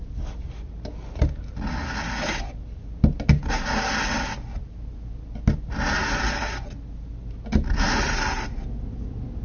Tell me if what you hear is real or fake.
real